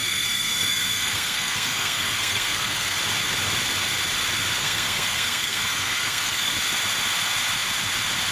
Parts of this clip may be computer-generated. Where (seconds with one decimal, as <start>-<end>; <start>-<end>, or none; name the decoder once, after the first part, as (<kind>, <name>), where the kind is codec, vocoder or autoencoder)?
0.0-3.0 (codec, SNAC); 4.6-6.5